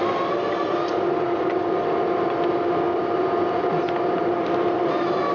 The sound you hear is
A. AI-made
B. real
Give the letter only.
B